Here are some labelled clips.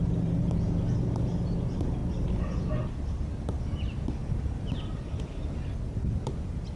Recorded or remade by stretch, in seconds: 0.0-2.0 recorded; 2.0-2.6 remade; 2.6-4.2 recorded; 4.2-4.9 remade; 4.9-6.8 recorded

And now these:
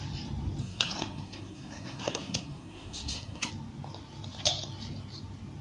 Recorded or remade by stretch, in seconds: 0.0-0.6 recorded; 0.6-3.5 remade; 3.5-5.6 recorded

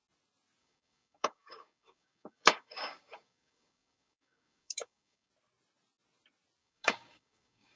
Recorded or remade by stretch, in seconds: 0.0-0.6 recorded; 0.6-5.3 remade; 5.3-6.6 recorded; 6.6-7.8 remade

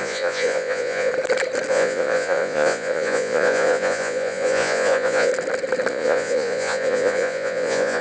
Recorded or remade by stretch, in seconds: 0.0-1.1 remade; 1.1-1.7 recorded; 1.7-5.3 remade; 5.3-5.9 recorded; 5.9-8.0 remade

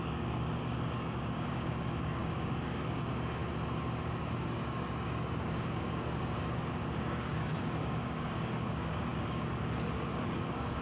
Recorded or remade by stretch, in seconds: 0.0-3.4 remade; 3.4-4.2 recorded; 4.2-10.8 remade